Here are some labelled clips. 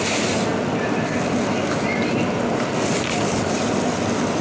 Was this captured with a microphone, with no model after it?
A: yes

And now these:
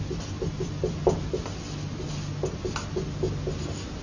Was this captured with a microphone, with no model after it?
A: yes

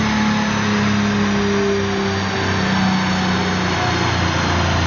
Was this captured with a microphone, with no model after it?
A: yes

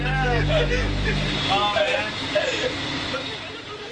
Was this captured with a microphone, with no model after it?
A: yes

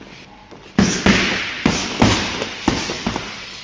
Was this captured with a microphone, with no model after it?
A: yes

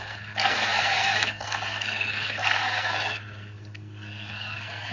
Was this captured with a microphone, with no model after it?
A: no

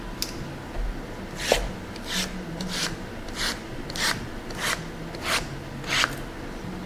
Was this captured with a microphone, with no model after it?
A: yes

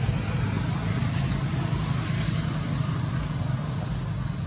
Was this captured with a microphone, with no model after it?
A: yes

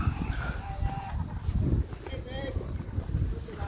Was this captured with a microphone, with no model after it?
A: yes